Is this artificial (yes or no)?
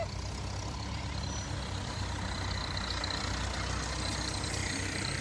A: no